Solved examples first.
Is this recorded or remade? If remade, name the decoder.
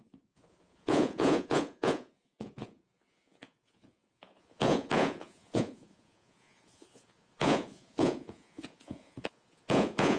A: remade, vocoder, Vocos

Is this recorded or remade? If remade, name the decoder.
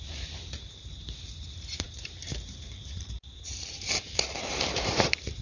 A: remade, vocoder, BigVGAN v2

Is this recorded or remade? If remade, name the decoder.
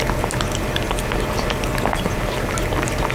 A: recorded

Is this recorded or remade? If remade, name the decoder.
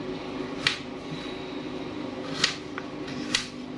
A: recorded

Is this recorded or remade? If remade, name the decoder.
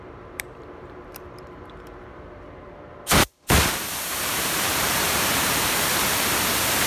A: remade, vocoder, BigVGAN v2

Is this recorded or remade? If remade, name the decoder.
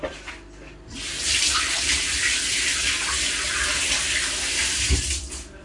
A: remade, vocoder, BigVGAN v2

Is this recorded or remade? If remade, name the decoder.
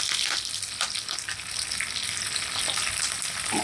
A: recorded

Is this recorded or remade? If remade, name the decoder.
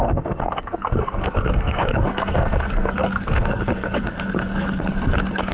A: remade, codec, SNAC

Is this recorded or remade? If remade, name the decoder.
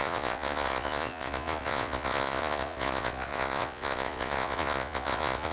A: remade, vocoder, Vocos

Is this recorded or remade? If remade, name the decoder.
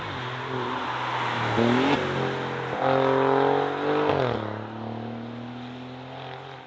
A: recorded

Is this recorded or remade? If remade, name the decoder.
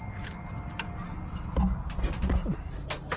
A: recorded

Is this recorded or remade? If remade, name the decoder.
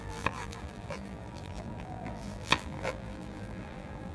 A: remade, vocoder, BigVGAN v2